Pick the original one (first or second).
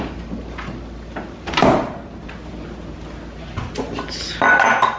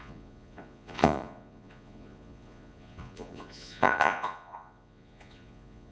first